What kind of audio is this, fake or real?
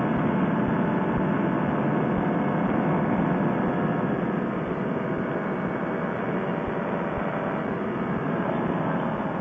real